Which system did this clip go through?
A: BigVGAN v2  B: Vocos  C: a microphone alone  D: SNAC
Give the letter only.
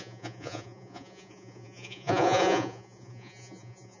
B